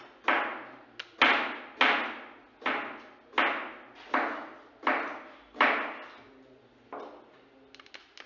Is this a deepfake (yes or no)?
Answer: no